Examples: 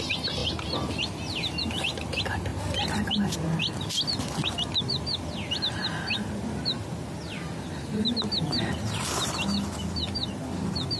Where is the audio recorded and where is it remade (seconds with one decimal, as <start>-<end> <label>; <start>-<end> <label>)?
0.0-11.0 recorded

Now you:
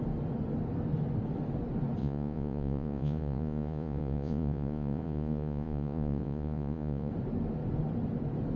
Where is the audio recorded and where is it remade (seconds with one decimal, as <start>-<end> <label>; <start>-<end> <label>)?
0.0-2.0 recorded; 2.0-7.1 remade; 7.1-8.6 recorded

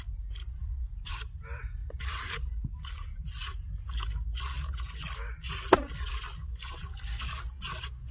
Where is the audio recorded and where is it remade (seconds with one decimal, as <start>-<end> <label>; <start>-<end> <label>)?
0.0-0.4 recorded; 0.4-1.1 remade; 1.1-1.8 recorded; 1.8-2.7 remade; 2.7-8.1 recorded